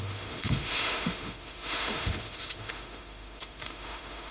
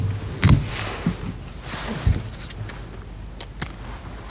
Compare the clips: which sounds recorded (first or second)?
second